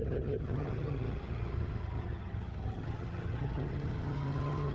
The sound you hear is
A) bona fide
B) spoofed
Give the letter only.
B